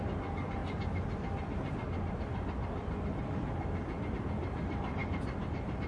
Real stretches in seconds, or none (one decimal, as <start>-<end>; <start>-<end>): 0.0-5.9